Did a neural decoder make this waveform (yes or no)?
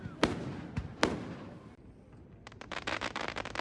no